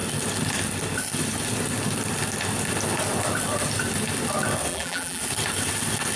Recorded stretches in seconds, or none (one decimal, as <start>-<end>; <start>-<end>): 0.0-4.7; 5.2-6.2